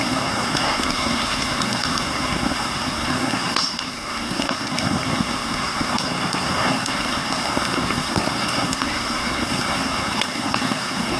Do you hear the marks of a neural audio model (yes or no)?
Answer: yes